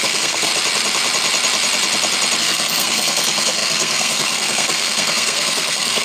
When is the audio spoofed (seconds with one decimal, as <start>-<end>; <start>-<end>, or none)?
0.0-0.5; 2.4-6.0